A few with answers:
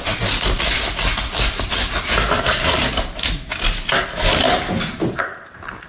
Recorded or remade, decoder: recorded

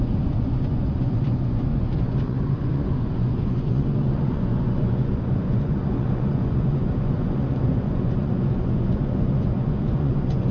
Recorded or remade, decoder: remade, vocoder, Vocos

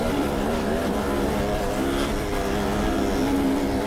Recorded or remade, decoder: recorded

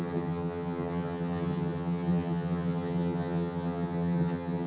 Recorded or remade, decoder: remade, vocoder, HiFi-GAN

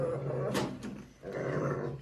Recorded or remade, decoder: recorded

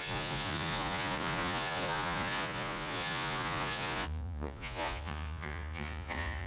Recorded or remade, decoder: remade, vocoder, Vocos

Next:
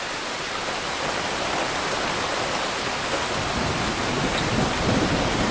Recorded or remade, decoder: recorded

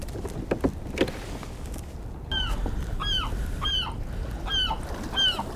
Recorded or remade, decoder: recorded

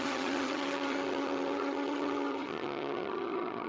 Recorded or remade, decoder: remade, vocoder, HiFi-GAN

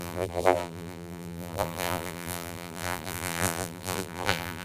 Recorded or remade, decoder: remade, vocoder, BigVGAN v2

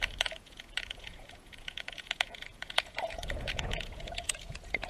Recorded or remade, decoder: remade, vocoder, Vocos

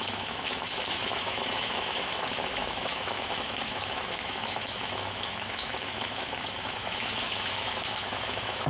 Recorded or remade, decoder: remade, autoencoder, DAC-VAE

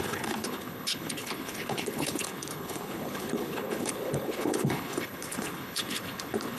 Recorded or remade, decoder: remade, codec, HILCodec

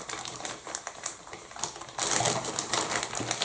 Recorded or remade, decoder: remade, vocoder, BigVGAN v2